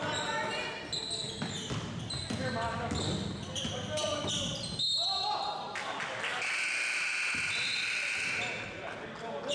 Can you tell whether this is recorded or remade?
recorded